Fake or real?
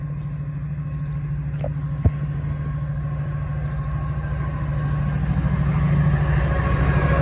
real